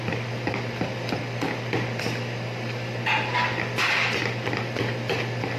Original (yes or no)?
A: yes